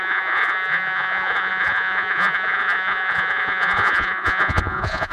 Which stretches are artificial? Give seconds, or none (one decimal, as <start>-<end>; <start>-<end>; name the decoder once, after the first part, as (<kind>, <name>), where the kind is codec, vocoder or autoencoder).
0.0-5.1 (vocoder, Vocos)